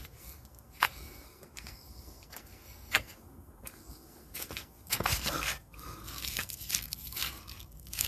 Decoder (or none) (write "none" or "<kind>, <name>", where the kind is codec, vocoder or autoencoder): codec, SNAC